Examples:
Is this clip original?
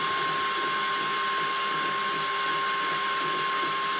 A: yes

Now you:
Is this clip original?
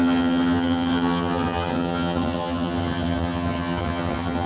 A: no